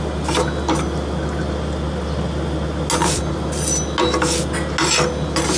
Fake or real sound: real